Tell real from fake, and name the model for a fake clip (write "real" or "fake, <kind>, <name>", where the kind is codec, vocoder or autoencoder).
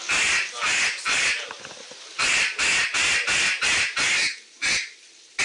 real